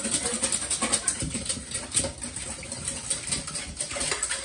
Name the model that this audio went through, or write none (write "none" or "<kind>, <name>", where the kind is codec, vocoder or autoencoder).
none